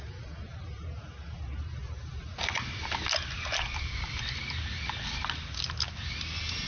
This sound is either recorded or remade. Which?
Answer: recorded